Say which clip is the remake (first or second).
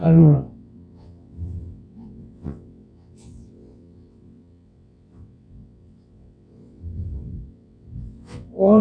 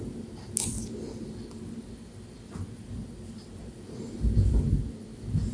first